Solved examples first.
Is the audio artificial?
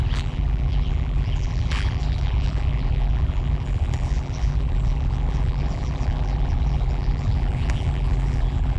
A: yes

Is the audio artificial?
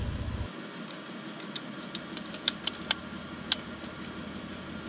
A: no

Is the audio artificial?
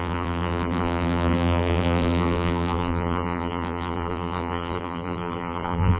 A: yes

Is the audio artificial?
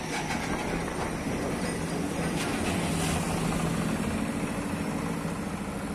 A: no